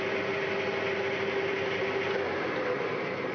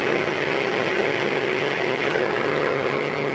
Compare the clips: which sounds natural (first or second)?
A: first